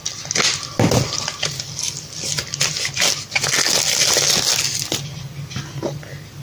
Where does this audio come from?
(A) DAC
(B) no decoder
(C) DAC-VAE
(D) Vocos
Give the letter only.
B